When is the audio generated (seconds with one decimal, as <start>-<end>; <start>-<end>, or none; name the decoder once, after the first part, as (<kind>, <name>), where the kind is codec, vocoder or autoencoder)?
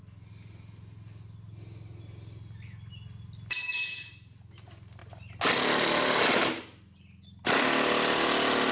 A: none